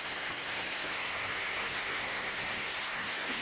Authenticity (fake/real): fake